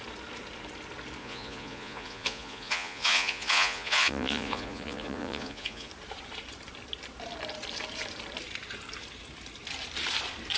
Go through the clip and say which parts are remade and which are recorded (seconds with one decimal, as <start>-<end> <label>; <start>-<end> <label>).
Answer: 0.0-1.2 recorded; 1.2-5.9 remade; 5.9-10.6 recorded